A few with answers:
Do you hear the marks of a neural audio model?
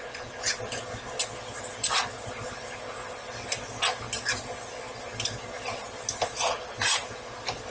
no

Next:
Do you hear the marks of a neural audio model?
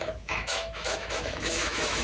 yes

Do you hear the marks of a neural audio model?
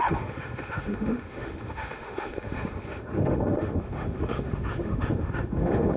yes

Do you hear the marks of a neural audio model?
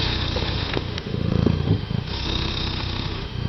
yes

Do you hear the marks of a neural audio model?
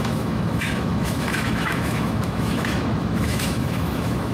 yes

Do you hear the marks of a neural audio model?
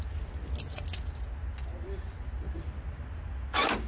no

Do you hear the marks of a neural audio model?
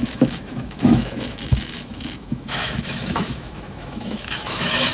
yes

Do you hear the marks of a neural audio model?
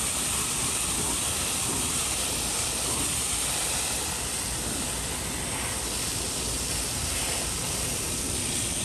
no